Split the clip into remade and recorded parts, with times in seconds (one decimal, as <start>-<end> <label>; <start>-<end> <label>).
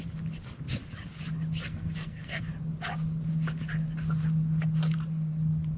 0.0-1.7 recorded; 1.7-2.5 remade; 2.5-5.8 recorded